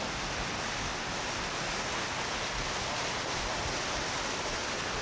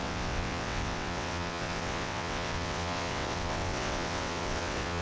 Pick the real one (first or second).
first